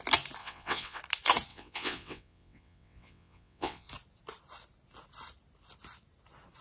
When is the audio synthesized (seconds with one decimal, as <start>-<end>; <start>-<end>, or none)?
0.4-1.0; 1.5-3.9